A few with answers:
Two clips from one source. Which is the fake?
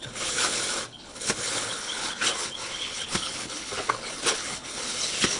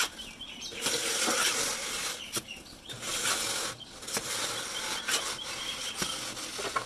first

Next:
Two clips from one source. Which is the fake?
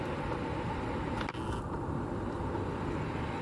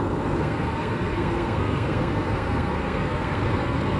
second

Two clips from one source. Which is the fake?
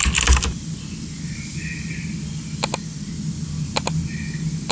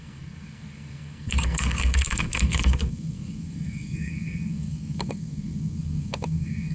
second